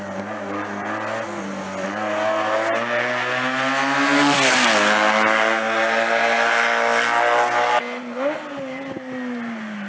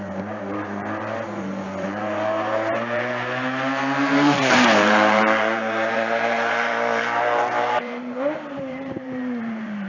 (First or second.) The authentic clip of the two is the first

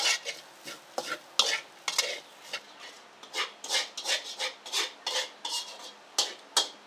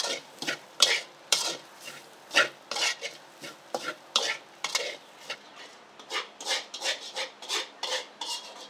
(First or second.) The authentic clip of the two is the first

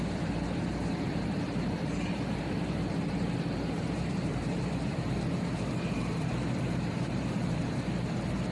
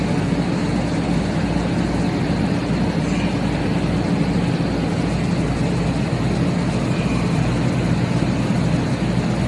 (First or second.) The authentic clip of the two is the second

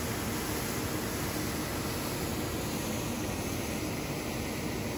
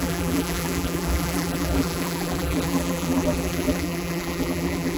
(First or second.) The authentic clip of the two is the first